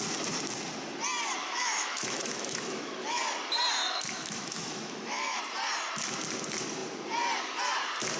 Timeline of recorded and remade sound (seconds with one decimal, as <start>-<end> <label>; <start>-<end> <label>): 0.0-1.4 recorded; 1.4-3.2 remade; 3.2-3.8 recorded; 3.8-5.4 remade; 5.4-8.2 recorded